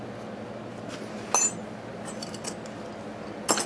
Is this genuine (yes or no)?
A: yes